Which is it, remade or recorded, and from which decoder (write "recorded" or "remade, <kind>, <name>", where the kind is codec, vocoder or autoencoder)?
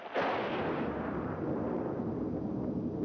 recorded